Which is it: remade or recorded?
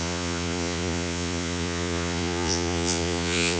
remade